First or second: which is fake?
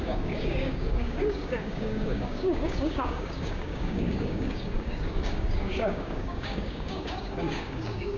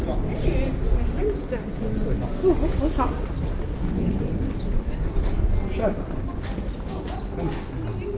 first